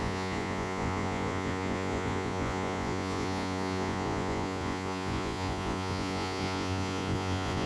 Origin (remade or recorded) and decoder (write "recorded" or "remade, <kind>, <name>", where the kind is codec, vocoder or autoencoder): remade, vocoder, Vocos